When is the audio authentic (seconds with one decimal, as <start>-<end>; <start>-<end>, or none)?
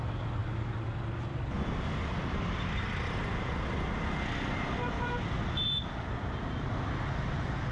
0.0-7.7